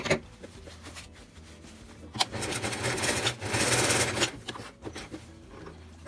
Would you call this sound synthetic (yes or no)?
no